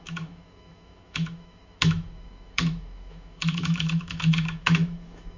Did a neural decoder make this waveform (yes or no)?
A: yes